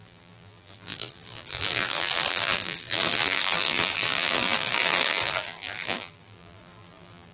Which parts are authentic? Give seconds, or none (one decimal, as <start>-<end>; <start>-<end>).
none